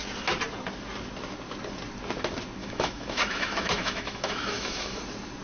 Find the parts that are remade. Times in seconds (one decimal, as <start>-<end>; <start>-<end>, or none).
2.6-5.0